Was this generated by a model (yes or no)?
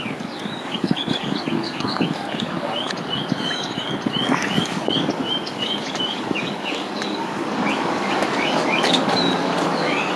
yes